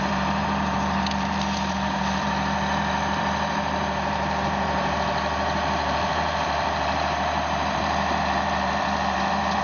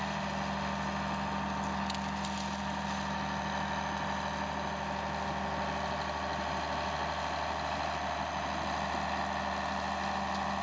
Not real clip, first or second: first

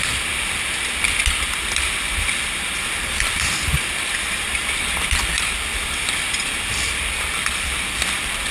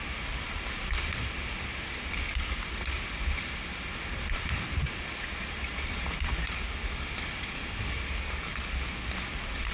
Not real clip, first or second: first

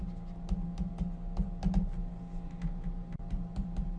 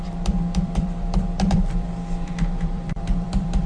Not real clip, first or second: second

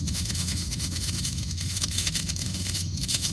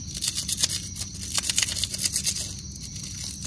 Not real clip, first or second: first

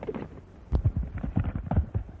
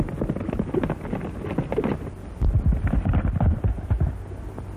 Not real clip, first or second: first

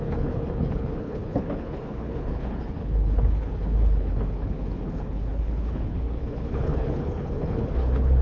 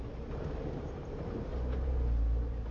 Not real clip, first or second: first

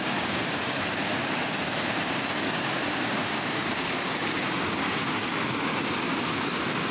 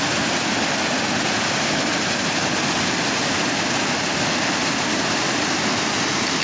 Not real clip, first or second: first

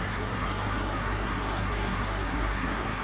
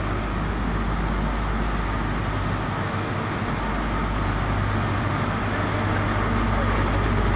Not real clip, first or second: first